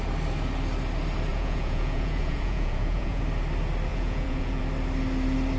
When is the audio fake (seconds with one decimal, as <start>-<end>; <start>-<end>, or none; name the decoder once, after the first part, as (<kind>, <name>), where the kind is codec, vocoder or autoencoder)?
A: 1.3-3.2 (vocoder, Vocos); 3.9-4.6